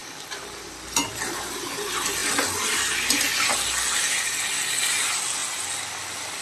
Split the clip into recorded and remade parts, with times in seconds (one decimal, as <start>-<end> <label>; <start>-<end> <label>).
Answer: 0.0-6.4 recorded

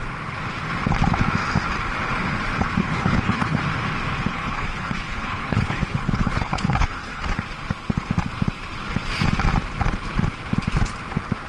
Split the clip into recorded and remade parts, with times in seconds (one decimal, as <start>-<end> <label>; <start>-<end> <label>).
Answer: 0.0-2.8 recorded; 2.8-3.6 remade; 3.6-4.3 recorded; 4.3-7.2 remade; 7.2-11.5 recorded

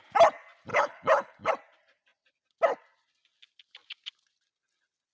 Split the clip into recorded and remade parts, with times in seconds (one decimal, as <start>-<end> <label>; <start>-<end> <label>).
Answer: 0.0-0.7 recorded; 0.7-1.5 remade; 1.5-5.1 recorded

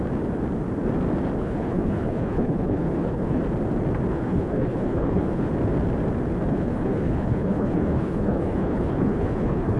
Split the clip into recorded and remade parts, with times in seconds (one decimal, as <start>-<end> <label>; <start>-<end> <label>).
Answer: 0.0-1.4 recorded; 1.4-3.4 remade; 3.4-4.1 recorded; 4.1-5.5 remade; 5.5-6.5 recorded; 6.5-9.8 remade

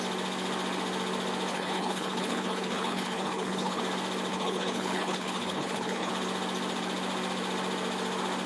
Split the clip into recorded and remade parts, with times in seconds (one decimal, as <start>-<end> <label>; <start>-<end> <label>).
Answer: 0.0-1.5 recorded; 1.5-3.8 remade; 3.8-4.3 recorded; 4.3-6.1 remade; 6.1-8.5 recorded

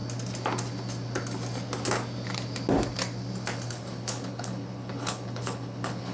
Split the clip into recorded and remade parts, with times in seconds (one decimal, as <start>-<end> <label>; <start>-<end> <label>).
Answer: 0.0-3.7 recorded; 3.7-6.1 remade